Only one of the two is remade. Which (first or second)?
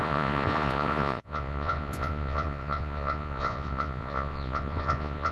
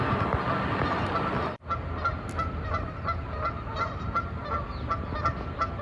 first